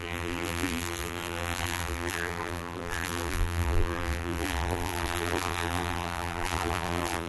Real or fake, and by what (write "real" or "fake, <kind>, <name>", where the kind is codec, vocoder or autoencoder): fake, vocoder, BigVGAN v2